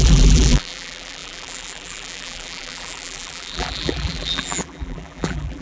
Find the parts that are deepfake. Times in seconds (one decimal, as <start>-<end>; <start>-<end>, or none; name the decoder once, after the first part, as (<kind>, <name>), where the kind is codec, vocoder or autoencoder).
0.0-5.6 (vocoder, BigVGAN v2)